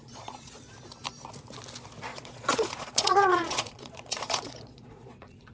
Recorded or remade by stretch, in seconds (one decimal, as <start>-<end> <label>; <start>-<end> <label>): 0.0-0.7 remade; 0.7-2.1 recorded; 2.1-5.5 remade